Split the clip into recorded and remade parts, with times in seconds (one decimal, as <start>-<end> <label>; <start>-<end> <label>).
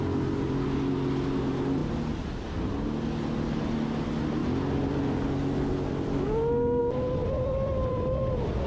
0.0-7.2 recorded; 7.2-8.7 remade